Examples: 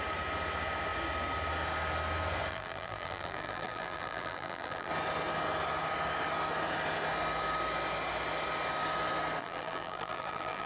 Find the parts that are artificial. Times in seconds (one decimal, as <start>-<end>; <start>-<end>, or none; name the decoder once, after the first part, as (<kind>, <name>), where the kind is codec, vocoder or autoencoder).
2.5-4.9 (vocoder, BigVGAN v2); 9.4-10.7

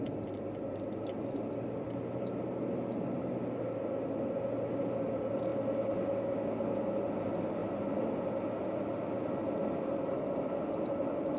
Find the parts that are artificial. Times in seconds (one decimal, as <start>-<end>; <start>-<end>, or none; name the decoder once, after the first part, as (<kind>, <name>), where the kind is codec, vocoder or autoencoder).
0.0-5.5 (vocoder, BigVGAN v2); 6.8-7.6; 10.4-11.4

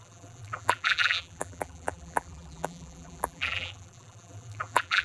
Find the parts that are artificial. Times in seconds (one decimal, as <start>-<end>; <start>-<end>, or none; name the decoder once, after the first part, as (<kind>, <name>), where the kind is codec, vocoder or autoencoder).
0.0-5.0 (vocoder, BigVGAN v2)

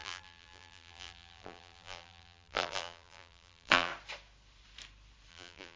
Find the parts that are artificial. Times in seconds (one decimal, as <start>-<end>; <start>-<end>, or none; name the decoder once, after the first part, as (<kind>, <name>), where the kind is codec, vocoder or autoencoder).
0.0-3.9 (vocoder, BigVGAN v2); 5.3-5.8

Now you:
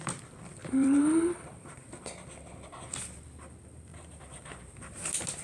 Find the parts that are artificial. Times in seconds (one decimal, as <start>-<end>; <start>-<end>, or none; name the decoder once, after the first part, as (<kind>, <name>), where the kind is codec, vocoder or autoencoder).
0.6-1.9 (vocoder, BigVGAN v2); 3.9-5.0